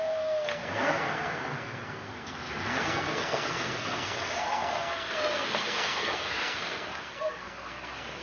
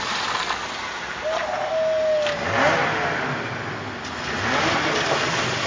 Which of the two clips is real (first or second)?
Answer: second